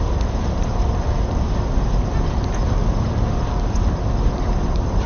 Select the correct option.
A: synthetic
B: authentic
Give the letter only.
B